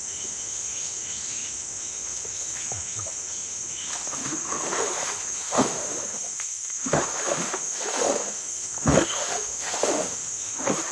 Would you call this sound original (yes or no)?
no